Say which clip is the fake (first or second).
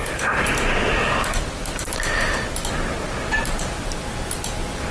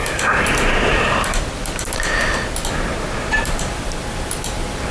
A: second